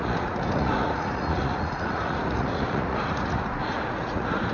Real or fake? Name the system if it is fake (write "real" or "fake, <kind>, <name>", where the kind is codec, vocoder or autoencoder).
fake, vocoder, Vocos